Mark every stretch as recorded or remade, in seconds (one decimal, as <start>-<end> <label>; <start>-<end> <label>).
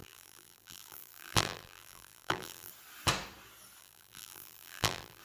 0.0-2.7 remade; 2.7-3.8 recorded; 3.8-5.2 remade